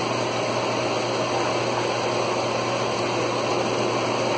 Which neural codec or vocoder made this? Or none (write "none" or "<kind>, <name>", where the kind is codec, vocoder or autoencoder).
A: none